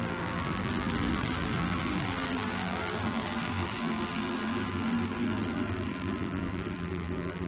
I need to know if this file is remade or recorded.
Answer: remade